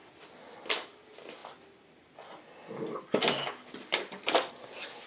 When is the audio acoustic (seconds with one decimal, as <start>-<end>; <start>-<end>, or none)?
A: 0.0-5.1